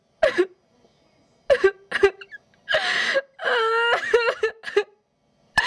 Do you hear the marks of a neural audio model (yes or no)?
no